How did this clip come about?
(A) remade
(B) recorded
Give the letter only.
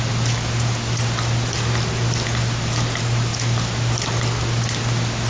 B